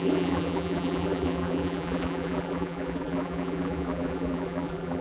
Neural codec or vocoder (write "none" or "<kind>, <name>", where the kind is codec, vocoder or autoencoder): vocoder, BigVGAN v2